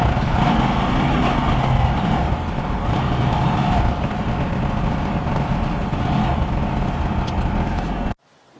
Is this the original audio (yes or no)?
yes